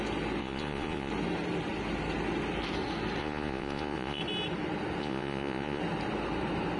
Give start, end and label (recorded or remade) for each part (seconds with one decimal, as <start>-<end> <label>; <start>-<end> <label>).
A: 0.0-0.4 recorded; 0.4-1.1 remade; 1.1-3.2 recorded; 3.2-4.2 remade; 4.2-5.0 recorded; 5.0-5.8 remade; 5.8-6.8 recorded